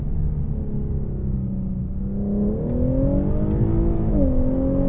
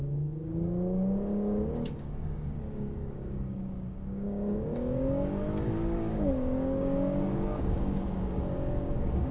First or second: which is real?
first